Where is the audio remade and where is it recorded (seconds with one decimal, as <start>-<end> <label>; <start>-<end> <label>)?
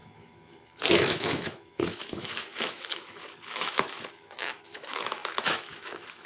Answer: 0.0-6.3 remade